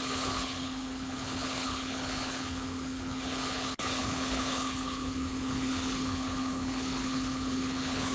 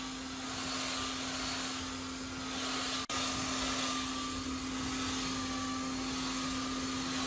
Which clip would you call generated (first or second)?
first